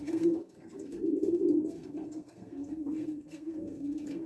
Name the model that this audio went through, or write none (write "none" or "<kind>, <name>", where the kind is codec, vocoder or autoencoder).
codec, SNAC